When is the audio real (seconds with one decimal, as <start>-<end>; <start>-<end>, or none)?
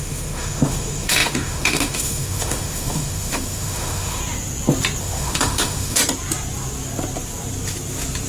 4.2-5.0; 6.0-8.3